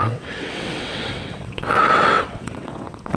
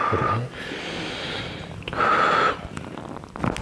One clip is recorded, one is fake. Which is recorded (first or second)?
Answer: second